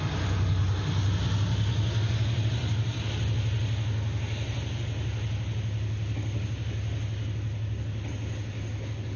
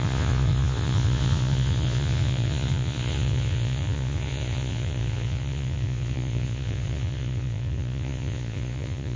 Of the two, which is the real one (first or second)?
first